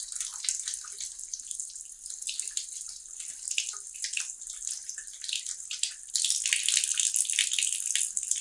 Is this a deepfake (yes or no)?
no